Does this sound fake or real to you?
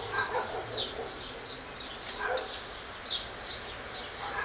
real